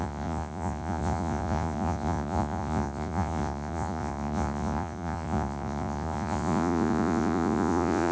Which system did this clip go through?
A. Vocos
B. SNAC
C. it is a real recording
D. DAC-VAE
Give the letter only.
A